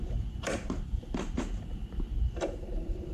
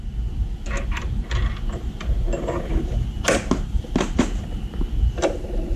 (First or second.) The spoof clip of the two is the first